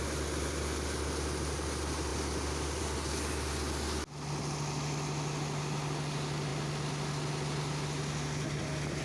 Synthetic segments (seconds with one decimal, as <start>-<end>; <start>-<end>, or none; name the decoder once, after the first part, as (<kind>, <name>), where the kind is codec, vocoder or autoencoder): none